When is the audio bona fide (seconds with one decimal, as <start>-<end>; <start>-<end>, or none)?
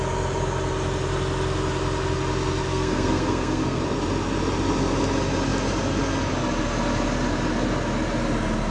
0.0-2.7; 3.8-8.7